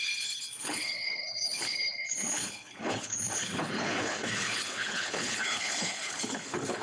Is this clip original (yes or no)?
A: no